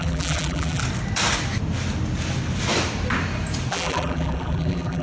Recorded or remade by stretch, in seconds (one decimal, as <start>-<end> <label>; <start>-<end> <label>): 0.0-0.8 remade; 0.8-3.7 recorded; 3.7-5.0 remade